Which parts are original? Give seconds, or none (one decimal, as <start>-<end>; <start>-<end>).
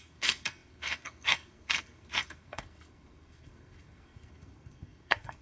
none